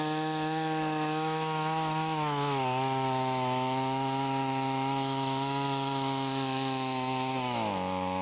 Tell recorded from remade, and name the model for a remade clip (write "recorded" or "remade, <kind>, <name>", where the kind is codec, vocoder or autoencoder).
remade, autoencoder, DAC-VAE